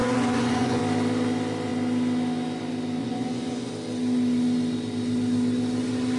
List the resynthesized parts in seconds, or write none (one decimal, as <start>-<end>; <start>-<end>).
0.0-0.8; 3.0-3.7